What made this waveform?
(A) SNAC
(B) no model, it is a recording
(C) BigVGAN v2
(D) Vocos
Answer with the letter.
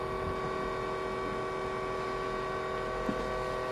B